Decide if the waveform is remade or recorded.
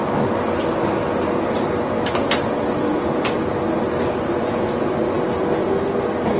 recorded